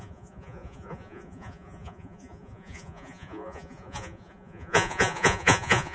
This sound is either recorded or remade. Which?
remade